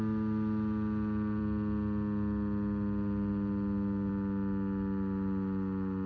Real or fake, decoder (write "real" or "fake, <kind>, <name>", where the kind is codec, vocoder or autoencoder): real